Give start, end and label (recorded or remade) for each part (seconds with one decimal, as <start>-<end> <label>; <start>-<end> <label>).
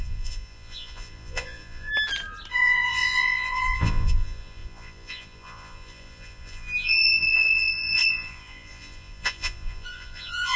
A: 0.0-1.9 remade; 1.9-2.5 recorded; 2.5-10.6 remade